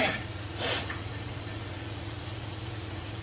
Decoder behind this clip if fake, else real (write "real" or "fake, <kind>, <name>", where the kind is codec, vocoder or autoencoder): fake, vocoder, Vocos